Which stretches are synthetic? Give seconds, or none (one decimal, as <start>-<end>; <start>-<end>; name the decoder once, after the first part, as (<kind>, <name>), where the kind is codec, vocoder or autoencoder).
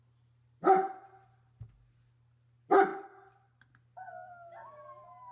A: none